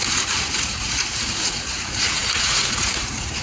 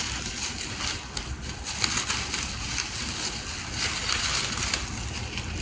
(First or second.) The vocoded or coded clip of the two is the first